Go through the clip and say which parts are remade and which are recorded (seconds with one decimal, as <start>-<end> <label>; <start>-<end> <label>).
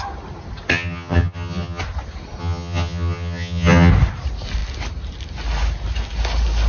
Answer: 0.0-0.7 recorded; 0.7-1.8 remade; 1.8-2.4 recorded; 2.4-3.9 remade; 3.9-6.7 recorded